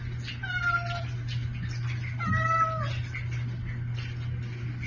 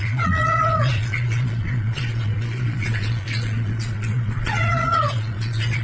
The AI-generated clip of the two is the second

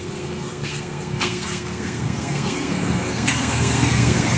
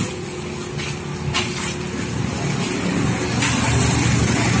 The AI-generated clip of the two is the first